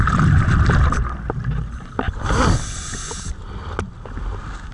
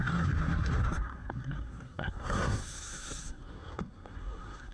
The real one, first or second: first